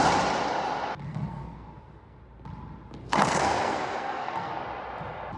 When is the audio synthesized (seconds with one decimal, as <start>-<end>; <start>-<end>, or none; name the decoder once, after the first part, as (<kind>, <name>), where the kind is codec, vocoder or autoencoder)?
1.1-2.2 (codec, SNAC); 3.0-4.6